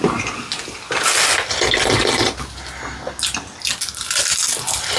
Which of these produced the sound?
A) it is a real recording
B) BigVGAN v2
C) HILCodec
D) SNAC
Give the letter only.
A